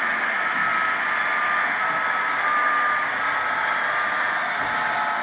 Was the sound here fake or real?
real